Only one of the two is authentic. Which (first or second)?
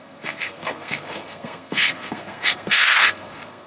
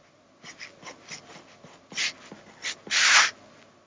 second